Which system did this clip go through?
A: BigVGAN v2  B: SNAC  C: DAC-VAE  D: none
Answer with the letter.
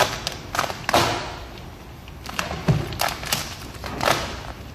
D